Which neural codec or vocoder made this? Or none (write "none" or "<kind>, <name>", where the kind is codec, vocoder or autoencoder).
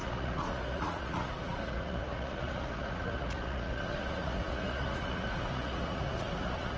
vocoder, Vocos